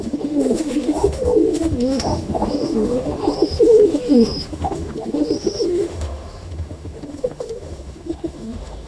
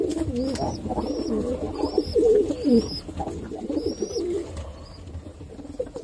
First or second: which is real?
second